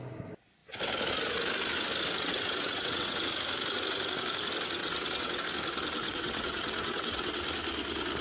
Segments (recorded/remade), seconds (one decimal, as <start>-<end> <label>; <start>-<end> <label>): 0.0-2.2 recorded; 2.2-3.1 remade; 3.1-4.8 recorded; 4.8-5.4 remade; 5.4-6.0 recorded; 6.0-7.4 remade; 7.4-8.2 recorded